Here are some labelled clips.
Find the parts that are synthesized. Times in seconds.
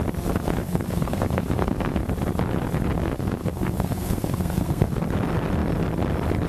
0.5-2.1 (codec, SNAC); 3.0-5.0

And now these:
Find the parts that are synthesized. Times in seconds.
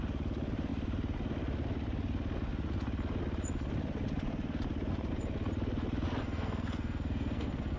6.2-7.8 (codec, SNAC)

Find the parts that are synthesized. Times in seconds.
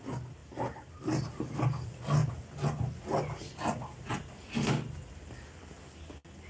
0.4-1.6 (vocoder, BigVGAN v2)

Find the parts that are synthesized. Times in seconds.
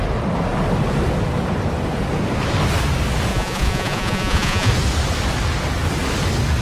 3.3-4.7 (vocoder, Vocos)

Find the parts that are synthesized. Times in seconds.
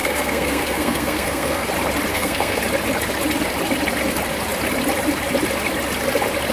0.0-1.7 (codec, SNAC); 2.1-2.6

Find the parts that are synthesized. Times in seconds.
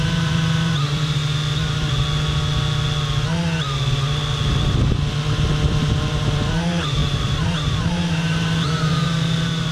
0.0-1.2 (vocoder, BigVGAN v2); 5.8-9.7